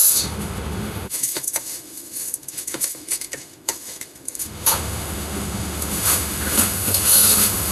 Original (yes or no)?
no